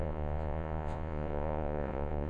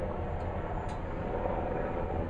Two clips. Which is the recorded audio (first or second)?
second